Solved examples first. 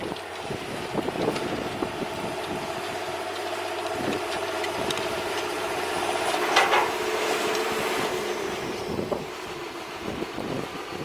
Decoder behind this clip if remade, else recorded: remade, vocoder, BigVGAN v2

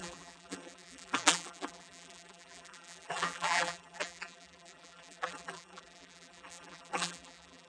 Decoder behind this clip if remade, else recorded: remade, vocoder, BigVGAN v2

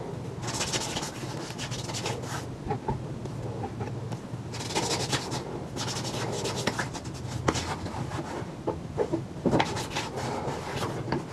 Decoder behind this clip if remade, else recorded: recorded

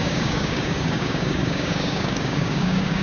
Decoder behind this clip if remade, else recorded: remade, codec, DAC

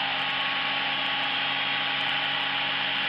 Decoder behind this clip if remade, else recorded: recorded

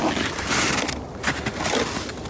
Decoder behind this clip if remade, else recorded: recorded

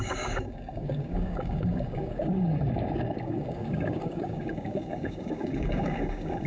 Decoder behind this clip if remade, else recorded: remade, codec, DAC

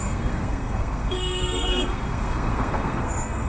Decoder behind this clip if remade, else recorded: remade, codec, SNAC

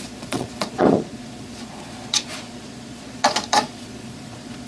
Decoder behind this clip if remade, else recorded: remade, vocoder, Vocos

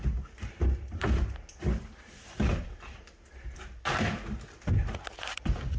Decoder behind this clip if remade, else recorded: recorded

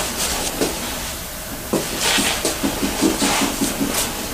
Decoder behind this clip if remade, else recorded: recorded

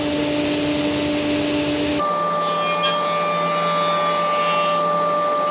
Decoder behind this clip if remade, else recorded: recorded